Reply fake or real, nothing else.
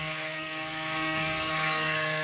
fake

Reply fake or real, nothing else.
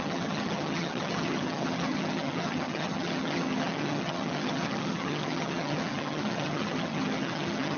fake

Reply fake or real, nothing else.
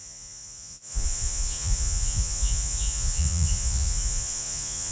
fake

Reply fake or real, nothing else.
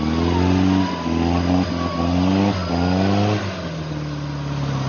real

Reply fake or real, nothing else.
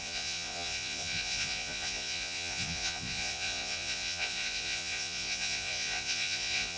fake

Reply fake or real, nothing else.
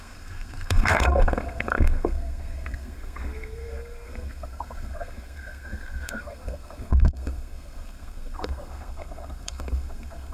fake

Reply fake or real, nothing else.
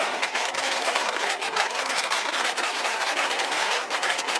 fake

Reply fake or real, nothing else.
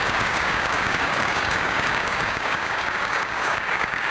fake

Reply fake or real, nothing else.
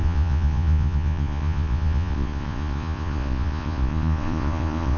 fake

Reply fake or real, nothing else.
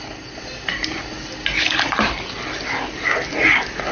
real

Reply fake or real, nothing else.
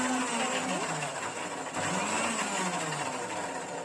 real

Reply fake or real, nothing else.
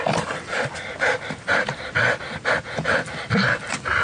real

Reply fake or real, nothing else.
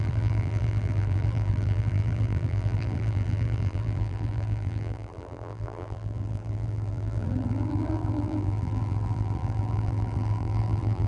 fake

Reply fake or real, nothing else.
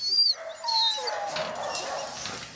real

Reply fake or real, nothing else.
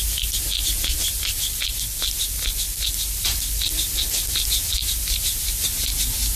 real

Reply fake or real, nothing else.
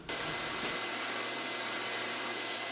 fake